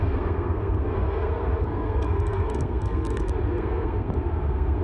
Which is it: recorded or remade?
remade